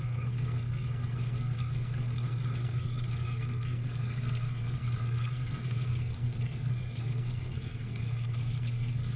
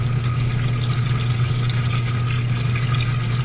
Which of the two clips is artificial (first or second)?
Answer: first